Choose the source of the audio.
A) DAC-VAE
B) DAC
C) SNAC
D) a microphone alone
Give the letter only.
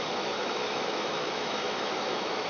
A